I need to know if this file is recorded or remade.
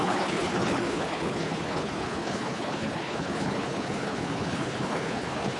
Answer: remade